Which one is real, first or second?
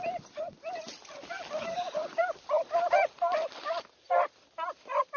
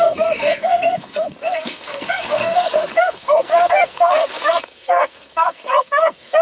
first